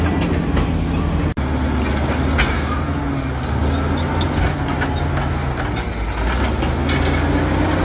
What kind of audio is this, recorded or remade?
recorded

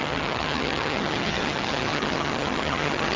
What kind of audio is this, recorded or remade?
remade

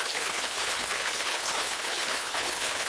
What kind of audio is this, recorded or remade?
remade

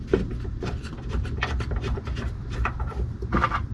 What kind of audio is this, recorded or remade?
remade